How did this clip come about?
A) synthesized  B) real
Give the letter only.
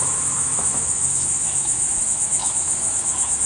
A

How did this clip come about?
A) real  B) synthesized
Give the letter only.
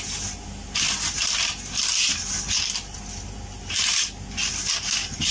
A